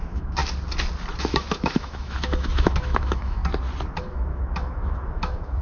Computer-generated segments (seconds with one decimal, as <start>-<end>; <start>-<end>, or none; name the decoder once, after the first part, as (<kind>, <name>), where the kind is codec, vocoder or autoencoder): 0.0-0.4 (autoencoder, DAC-VAE); 1.2-3.4; 4.0-5.6